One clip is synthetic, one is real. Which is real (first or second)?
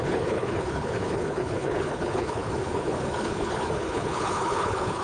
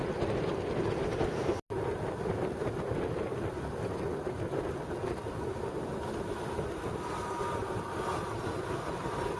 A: second